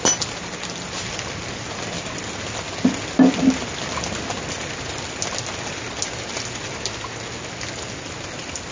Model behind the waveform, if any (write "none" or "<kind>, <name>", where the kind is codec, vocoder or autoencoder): none